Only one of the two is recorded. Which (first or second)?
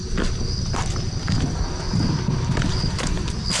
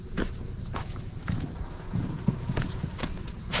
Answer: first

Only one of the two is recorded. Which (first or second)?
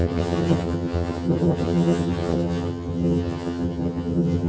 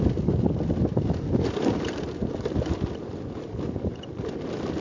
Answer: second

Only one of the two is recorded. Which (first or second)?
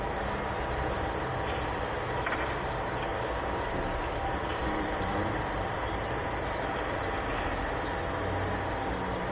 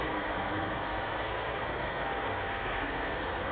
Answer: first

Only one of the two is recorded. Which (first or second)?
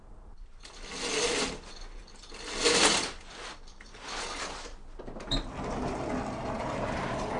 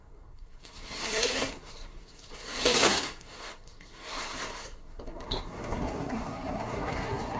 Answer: first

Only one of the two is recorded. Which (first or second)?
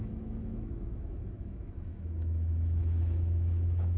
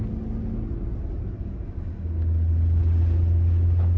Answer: second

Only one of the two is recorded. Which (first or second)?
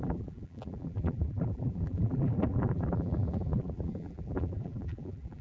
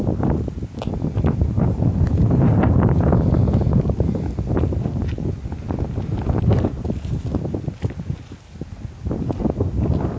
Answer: second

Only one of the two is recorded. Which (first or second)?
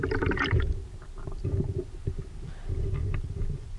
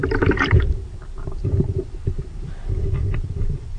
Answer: first